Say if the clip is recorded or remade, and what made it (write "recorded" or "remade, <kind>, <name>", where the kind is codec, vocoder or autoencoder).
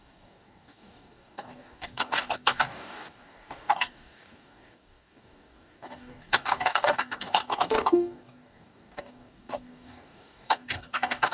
remade, codec, DAC